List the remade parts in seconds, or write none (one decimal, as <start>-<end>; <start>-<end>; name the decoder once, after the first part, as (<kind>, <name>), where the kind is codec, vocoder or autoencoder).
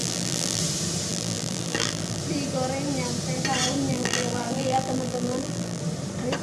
0.0-0.6 (vocoder, BigVGAN v2); 1.1-2.2; 3.9-5.8